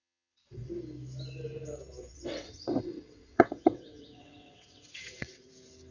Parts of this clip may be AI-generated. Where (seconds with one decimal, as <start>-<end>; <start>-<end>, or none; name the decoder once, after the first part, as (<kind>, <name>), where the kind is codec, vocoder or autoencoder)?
0.0-0.7 (vocoder, WaveNeXt); 2.0-5.5